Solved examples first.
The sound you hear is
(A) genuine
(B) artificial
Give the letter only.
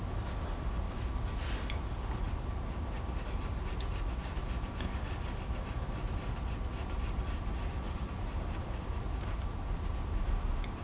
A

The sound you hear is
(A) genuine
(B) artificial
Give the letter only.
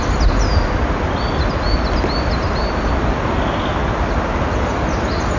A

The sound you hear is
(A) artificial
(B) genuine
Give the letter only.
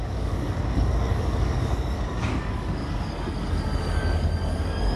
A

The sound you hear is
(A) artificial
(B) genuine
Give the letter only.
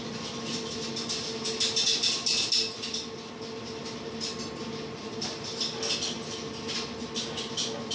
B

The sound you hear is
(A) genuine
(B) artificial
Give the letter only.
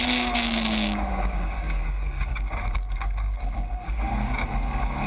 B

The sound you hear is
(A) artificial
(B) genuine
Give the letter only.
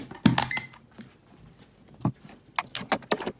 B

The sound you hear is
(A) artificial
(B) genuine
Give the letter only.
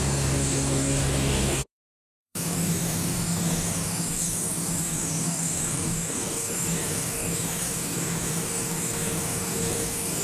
A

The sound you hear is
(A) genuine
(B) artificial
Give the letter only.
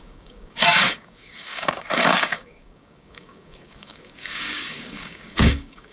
B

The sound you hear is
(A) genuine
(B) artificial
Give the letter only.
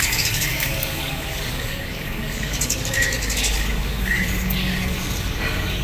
B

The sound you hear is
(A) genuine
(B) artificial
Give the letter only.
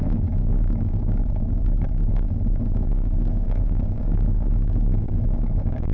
B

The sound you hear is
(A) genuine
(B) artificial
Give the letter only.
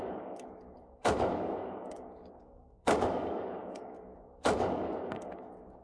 B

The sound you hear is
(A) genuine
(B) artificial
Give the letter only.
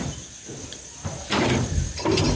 A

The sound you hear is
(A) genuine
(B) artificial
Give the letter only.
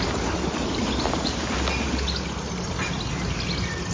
A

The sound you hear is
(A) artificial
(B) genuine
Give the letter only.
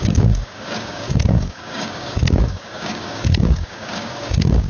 A